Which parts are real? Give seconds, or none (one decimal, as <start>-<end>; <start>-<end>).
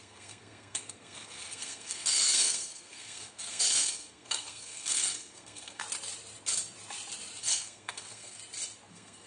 5.8-7.4; 8.4-8.9